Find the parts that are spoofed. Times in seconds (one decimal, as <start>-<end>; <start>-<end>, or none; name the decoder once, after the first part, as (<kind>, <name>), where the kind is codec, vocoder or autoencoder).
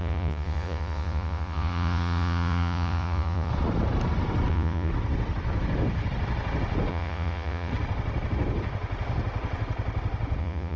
0.0-3.5 (vocoder, Vocos); 4.5-4.9; 6.9-7.7; 10.4-10.8